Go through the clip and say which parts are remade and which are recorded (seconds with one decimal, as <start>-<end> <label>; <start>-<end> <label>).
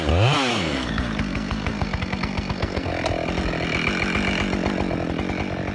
0.0-0.5 recorded; 0.5-2.9 remade; 2.9-5.7 recorded